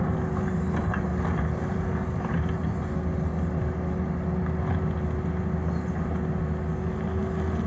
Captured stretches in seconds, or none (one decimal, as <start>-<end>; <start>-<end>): 0.0-7.7